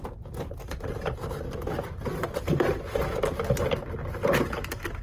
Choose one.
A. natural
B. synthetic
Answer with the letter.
A